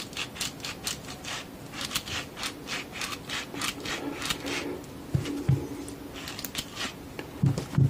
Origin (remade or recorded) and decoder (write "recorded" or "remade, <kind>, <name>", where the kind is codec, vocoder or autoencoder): recorded